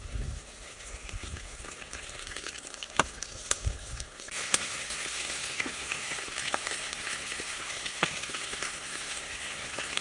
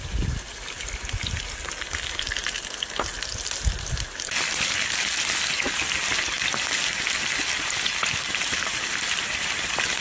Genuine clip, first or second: second